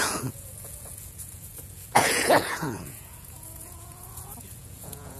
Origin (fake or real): fake